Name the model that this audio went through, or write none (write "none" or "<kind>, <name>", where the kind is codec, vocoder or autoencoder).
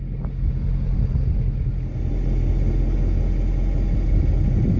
none